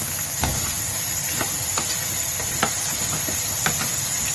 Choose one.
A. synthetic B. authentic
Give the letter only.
B